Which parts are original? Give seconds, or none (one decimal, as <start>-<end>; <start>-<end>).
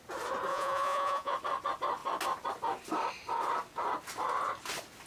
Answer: 0.0-0.5; 1.3-5.1